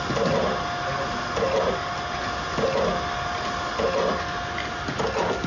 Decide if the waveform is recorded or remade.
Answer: recorded